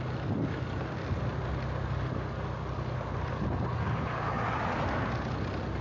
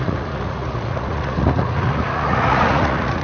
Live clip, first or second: first